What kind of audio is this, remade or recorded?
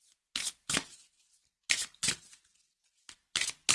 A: recorded